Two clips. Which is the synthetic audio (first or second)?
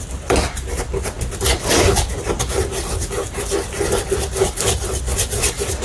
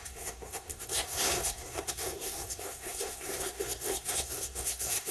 second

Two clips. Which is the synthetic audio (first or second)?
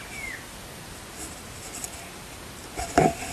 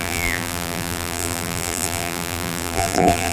second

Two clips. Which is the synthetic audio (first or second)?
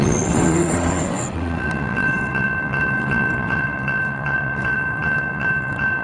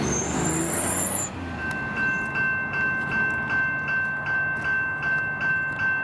first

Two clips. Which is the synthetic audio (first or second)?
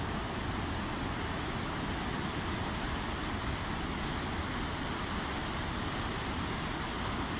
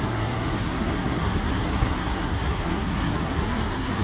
second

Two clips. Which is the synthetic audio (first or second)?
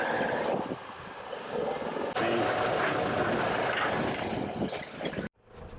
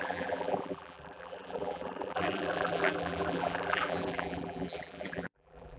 second